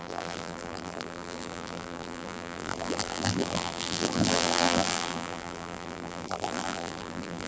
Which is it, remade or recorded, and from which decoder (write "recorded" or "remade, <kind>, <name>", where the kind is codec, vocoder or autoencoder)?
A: remade, vocoder, BigVGAN v2